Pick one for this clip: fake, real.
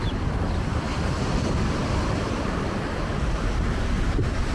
fake